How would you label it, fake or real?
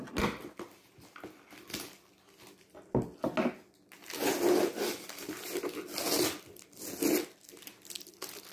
real